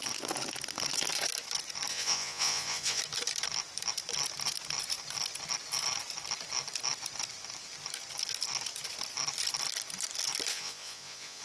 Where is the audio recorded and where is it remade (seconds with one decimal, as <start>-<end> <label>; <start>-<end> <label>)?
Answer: 0.0-1.9 recorded; 1.9-3.0 remade; 3.0-10.5 recorded; 10.5-11.4 remade